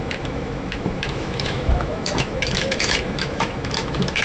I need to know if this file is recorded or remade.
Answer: remade